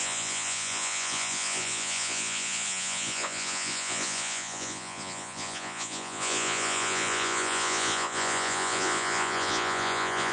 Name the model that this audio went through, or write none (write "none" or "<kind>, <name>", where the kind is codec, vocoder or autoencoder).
vocoder, Vocos